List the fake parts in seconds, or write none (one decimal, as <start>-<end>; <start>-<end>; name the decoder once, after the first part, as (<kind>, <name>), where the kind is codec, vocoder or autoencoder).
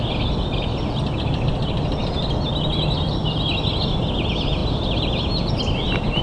none